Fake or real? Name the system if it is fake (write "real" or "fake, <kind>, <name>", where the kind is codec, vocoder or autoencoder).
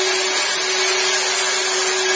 real